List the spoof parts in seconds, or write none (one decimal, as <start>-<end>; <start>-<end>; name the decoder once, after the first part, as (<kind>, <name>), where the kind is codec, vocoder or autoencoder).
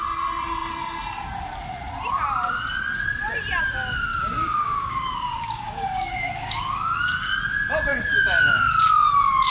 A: 4.1-7.4 (codec, DAC)